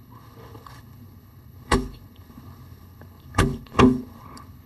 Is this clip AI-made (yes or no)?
yes